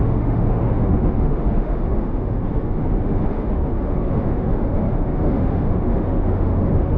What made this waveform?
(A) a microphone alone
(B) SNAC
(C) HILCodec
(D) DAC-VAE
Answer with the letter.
D